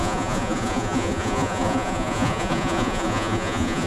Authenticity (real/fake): fake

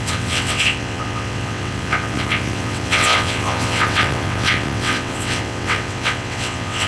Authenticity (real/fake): fake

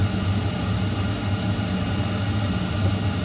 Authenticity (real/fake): real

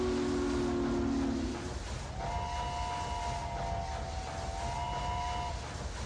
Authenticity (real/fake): real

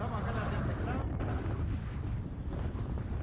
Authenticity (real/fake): real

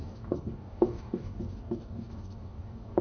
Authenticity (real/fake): fake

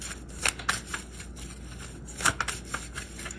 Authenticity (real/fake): real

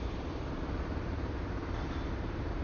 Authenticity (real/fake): fake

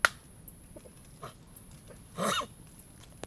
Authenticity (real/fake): real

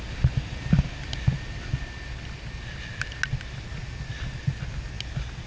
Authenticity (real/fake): real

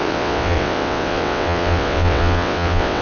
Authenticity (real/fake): fake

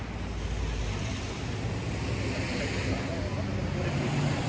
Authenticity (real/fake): real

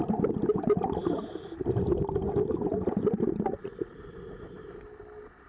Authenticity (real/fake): real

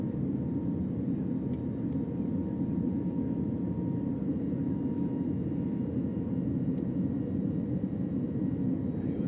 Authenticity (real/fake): real